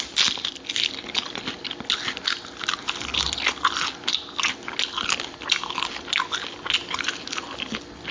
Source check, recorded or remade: recorded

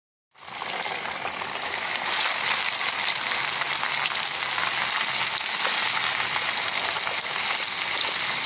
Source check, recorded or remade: recorded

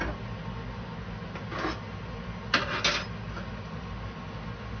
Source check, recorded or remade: recorded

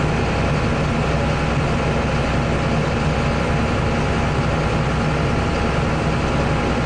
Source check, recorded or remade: recorded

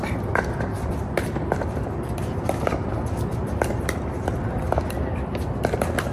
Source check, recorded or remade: recorded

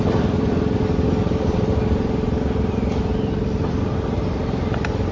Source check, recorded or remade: recorded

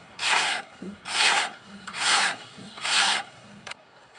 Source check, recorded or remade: remade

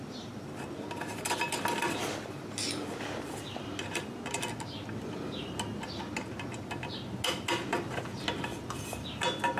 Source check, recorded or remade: recorded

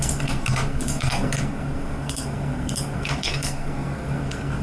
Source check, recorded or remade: remade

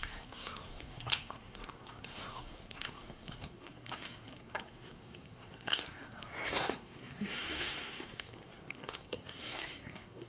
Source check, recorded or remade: remade